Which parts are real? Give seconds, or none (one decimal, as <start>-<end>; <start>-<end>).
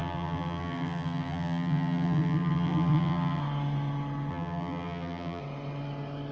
3.4-4.3; 5.4-6.3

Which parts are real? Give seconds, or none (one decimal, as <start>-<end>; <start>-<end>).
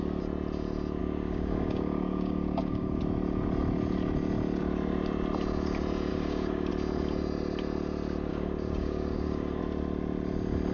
0.0-1.0; 3.0-6.1; 6.7-8.3; 9.6-10.7